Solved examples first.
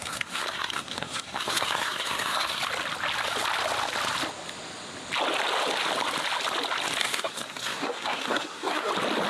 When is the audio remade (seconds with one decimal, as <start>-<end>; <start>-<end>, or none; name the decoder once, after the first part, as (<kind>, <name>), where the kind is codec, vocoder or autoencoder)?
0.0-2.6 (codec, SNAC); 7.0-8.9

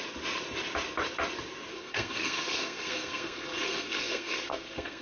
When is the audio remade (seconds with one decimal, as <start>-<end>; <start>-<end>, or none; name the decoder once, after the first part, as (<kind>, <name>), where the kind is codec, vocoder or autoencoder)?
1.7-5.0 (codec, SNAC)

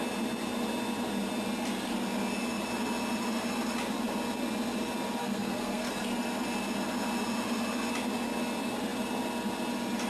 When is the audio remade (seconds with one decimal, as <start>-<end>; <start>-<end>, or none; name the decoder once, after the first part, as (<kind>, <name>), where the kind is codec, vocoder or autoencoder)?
5.2-5.9 (codec, SNAC)

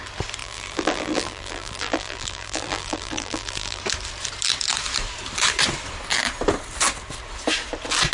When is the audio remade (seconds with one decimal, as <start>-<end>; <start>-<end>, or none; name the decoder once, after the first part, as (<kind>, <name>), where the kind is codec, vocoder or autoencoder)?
0.4-3.8 (vocoder, BigVGAN v2)

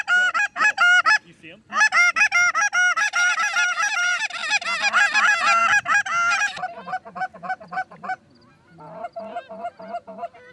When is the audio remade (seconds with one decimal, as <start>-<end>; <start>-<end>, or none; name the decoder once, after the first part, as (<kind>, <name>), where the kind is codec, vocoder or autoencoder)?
none